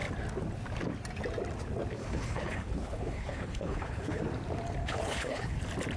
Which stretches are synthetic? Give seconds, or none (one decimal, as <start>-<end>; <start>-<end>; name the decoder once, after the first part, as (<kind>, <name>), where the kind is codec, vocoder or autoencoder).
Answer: 2.0-4.2 (codec, HILCodec); 4.8-5.6